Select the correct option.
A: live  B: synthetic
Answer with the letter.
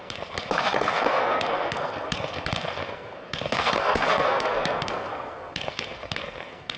B